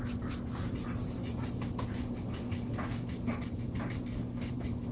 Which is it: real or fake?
real